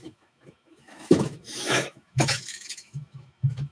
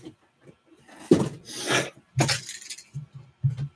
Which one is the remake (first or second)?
first